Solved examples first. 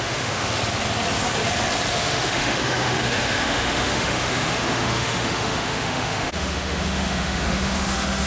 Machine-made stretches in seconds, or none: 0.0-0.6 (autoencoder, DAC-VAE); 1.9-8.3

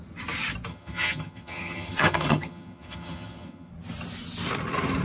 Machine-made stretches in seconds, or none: 0.7-3.7 (vocoder, HiFi-GAN)